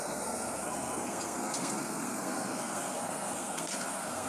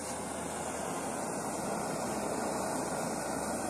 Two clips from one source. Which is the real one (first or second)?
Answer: second